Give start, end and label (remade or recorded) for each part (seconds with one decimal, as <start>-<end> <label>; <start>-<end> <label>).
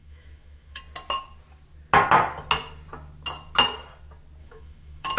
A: 0.0-0.8 remade; 0.8-4.4 recorded; 4.4-5.2 remade